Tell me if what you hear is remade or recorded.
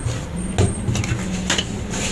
recorded